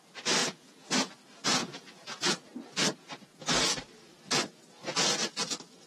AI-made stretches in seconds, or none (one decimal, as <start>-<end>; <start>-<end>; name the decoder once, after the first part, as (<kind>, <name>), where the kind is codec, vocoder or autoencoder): 0.4-1.1 (vocoder, Vocos); 1.6-2.3; 3.3-3.8; 4.8-5.3